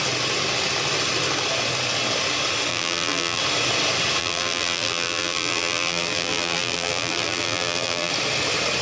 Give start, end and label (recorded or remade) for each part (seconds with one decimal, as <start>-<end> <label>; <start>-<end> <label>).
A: 0.0-2.7 recorded; 2.7-3.4 remade; 3.4-4.2 recorded; 4.2-8.1 remade; 8.1-8.8 recorded